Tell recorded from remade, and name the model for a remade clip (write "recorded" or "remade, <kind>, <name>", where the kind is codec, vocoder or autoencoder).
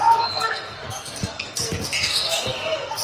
remade, codec, SNAC